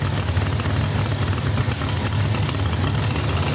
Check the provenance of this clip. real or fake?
real